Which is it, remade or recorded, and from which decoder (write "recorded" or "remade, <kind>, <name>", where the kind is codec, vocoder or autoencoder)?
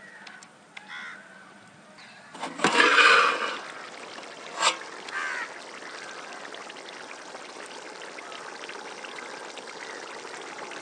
recorded